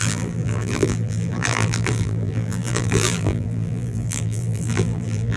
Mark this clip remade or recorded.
remade